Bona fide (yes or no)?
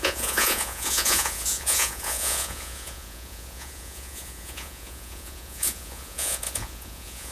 no